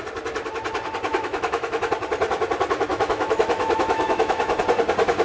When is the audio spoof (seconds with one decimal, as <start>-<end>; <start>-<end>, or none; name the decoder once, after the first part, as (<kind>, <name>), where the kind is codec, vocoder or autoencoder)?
1.1-1.9 (autoencoder, DAC-VAE); 2.9-4.6